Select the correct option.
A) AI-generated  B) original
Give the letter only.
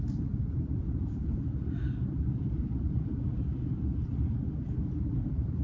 A